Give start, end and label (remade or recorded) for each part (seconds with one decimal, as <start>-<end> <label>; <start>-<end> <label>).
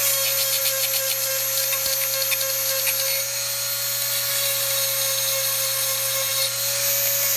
0.0-7.4 recorded